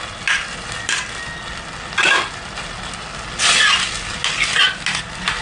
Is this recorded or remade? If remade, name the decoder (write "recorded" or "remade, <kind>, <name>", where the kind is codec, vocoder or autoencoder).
recorded